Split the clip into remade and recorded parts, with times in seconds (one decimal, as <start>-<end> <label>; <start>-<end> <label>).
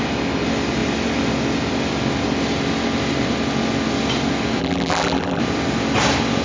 0.0-4.6 recorded; 4.6-5.4 remade; 5.4-6.4 recorded